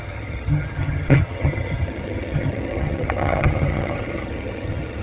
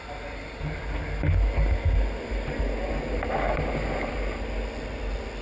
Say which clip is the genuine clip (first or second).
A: second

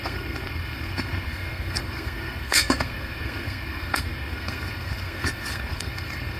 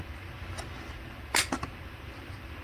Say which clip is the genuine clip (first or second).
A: second